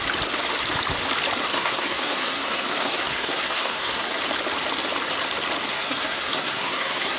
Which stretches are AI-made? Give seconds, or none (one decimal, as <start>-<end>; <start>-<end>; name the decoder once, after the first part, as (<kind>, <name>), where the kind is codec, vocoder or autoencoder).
1.4-4.2 (codec, SNAC); 5.7-7.2